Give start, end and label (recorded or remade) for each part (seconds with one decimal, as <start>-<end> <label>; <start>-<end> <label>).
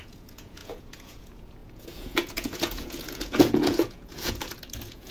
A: 0.0-5.1 remade